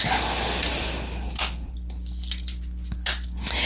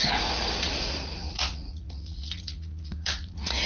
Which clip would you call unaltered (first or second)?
first